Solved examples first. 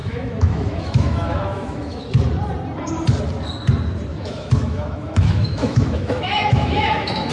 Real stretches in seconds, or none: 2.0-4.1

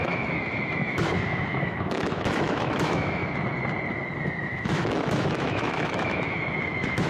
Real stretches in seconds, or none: 3.2-4.4

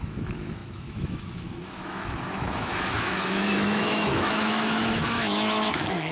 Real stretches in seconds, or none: none